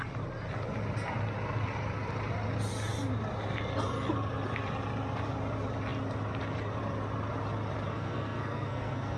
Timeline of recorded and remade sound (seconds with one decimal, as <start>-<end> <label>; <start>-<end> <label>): 0.0-7.9 recorded; 7.9-9.2 remade